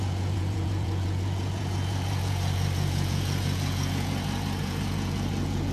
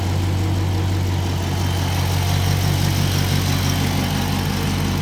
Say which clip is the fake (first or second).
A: first